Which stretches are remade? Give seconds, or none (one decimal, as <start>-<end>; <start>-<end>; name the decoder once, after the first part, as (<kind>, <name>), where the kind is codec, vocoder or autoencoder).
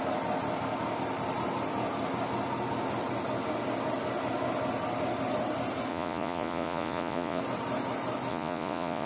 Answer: 5.9-7.4 (vocoder, Vocos); 8.3-9.1